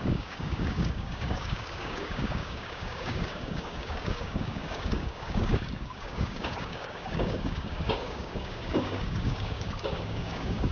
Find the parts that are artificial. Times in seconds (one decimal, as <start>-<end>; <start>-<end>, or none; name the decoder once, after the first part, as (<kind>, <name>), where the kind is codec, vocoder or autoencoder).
0.0-10.7 (codec, DAC)